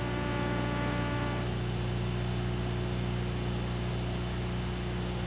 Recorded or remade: recorded